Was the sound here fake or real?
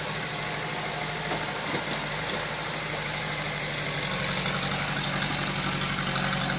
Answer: real